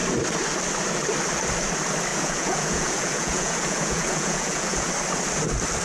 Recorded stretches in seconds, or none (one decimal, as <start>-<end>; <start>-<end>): 0.0-2.1; 4.9-5.8